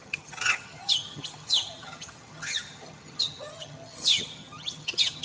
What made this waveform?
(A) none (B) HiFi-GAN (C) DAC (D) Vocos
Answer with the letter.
B